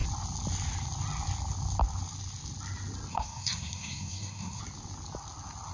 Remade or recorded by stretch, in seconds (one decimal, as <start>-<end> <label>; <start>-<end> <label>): 0.0-3.1 recorded; 3.1-4.6 remade; 4.6-5.7 recorded